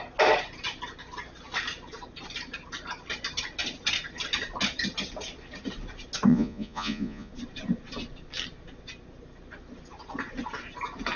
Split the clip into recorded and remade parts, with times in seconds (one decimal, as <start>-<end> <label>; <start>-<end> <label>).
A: 0.0-6.3 recorded; 6.3-7.3 remade; 7.3-11.2 recorded

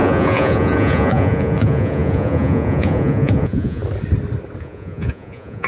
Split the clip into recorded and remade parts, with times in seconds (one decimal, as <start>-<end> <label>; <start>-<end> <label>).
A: 0.0-3.8 remade; 3.8-4.6 recorded; 4.6-5.7 remade